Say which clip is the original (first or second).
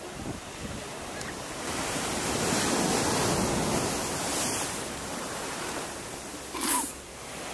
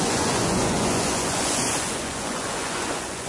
first